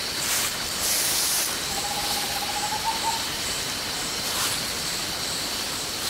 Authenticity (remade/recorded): recorded